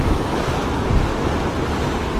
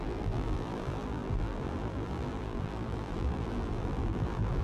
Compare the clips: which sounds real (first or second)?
first